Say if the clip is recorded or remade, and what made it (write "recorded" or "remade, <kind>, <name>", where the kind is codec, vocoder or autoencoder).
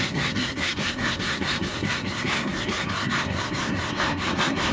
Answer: remade, codec, SNAC